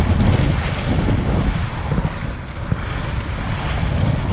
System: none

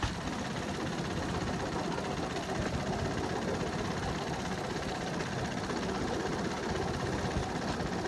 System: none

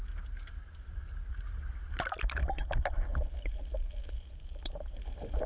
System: none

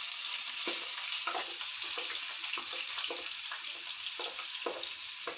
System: vocoder, BigVGAN v2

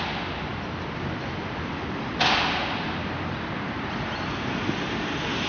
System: none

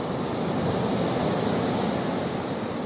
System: none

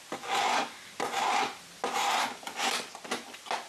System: none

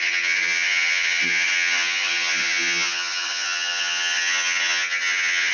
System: vocoder, HiFi-GAN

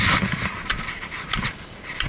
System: none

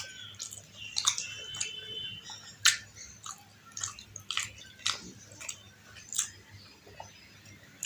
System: none